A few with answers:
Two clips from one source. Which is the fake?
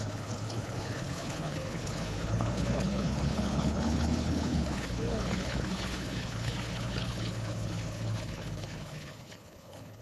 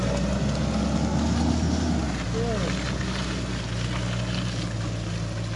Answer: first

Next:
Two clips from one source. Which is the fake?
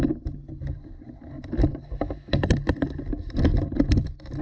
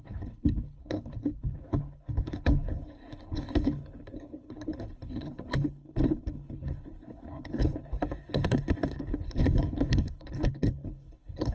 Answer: second